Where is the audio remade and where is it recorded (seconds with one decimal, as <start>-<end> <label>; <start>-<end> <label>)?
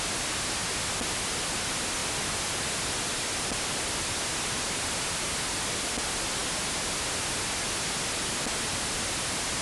0.0-9.6 recorded